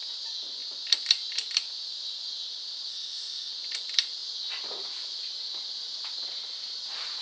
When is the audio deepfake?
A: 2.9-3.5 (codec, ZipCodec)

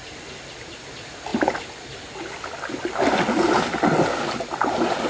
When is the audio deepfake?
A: none

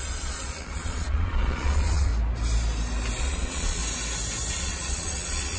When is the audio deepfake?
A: 0.0-2.1 (vocoder, Vocos); 3.2-3.8; 4.5-5.6